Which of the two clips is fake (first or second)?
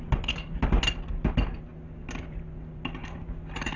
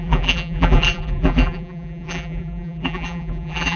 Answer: second